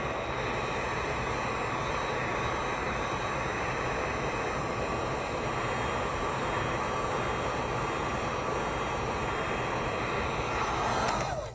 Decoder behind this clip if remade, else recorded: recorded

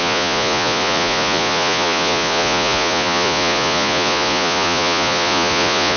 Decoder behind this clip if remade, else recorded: remade, vocoder, Vocos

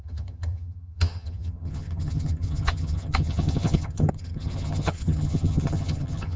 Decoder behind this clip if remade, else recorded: remade, vocoder, HiFi-GAN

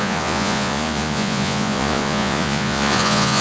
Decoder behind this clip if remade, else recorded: remade, vocoder, Vocos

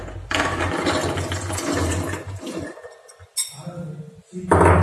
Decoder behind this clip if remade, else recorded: recorded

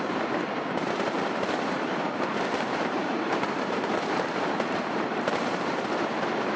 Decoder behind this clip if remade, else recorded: remade, vocoder, BigVGAN v2